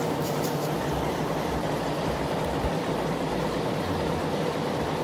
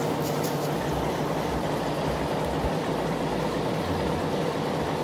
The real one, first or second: second